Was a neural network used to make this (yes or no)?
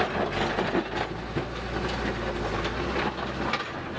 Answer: no